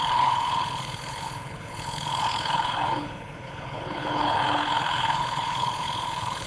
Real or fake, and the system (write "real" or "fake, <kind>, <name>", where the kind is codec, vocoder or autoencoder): fake, codec, HILCodec